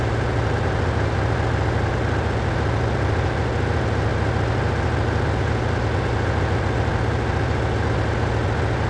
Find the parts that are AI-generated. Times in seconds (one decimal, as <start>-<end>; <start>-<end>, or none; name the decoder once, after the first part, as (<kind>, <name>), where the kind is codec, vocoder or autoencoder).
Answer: none